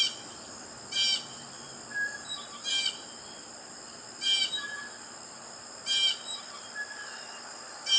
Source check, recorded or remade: recorded